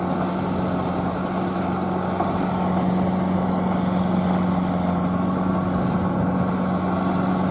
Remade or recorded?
recorded